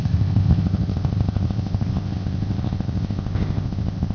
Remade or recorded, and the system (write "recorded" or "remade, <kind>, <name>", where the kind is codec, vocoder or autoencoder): remade, codec, ZipCodec